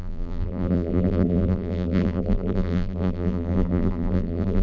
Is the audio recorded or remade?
remade